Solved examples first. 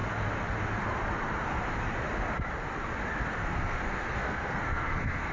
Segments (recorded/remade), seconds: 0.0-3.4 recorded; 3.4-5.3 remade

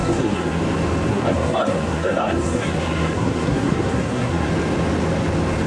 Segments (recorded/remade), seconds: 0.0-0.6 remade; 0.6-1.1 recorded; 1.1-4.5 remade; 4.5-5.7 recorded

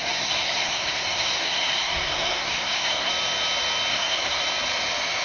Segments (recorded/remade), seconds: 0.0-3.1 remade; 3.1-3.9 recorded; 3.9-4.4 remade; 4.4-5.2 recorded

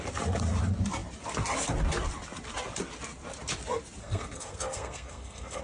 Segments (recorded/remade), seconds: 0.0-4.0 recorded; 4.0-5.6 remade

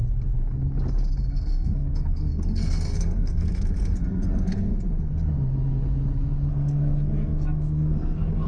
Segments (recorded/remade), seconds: 0.0-1.2 recorded; 1.2-4.7 remade; 4.7-6.5 recorded; 6.5-8.5 remade

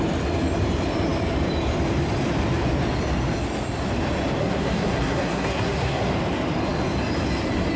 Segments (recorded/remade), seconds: 0.0-4.4 recorded; 4.4-6.1 remade; 6.1-7.8 recorded

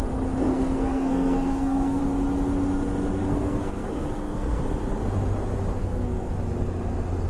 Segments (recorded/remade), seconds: 0.0-0.5 recorded; 0.5-2.0 remade; 2.0-3.2 recorded; 3.2-4.6 remade; 4.6-5.8 recorded; 5.8-6.3 remade; 6.3-7.3 recorded

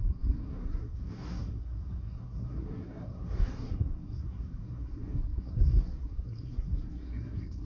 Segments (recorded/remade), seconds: 0.0-7.7 remade